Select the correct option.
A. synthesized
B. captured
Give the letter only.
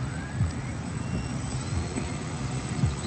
A